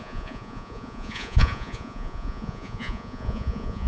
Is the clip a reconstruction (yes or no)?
yes